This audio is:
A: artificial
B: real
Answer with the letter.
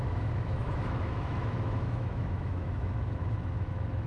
A